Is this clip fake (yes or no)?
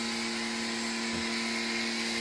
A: no